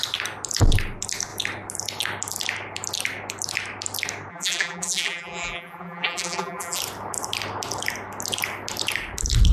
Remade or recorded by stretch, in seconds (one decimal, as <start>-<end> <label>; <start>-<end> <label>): 0.0-4.3 recorded; 4.3-6.8 remade; 6.8-9.5 recorded